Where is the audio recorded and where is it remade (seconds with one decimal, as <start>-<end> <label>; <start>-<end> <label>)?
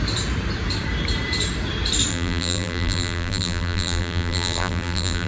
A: 0.0-2.1 recorded; 2.1-5.3 remade